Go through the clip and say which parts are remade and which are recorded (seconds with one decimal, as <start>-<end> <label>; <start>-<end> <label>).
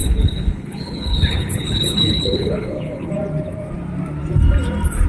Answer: 0.0-3.1 remade; 3.1-5.1 recorded